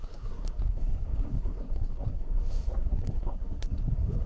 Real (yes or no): no